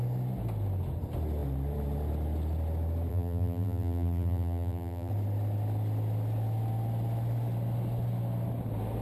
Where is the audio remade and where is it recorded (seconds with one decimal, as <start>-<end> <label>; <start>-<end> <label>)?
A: 0.0-3.1 recorded; 3.1-5.1 remade; 5.1-9.0 recorded